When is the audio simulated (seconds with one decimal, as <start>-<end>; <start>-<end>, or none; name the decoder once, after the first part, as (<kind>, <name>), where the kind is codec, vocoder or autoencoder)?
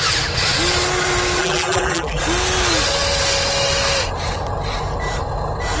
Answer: 1.4-2.2 (vocoder, BigVGAN v2)